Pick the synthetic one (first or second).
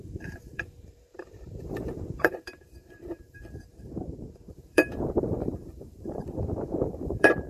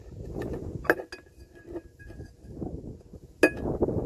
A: first